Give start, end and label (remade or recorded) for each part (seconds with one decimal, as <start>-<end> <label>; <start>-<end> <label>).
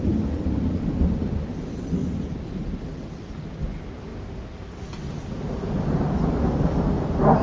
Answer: 0.0-7.4 recorded